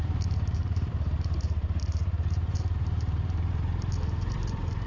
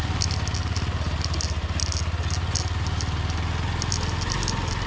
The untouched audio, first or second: second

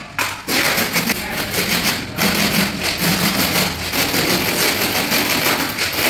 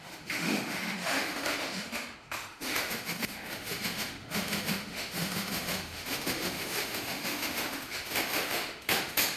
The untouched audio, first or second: first